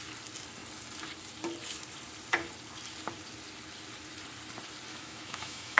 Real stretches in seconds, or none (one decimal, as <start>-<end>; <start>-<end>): 0.0-4.9